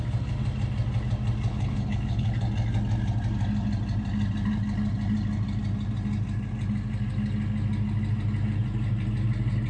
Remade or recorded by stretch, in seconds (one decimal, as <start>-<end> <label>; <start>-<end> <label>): 0.0-1.5 recorded; 1.5-2.4 remade; 2.4-9.7 recorded